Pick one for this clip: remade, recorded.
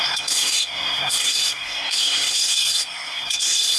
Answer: remade